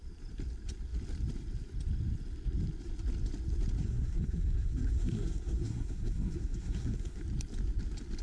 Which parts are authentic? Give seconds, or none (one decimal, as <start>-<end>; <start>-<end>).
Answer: 0.0-3.8; 7.2-8.2